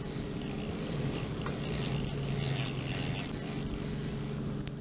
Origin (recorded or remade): recorded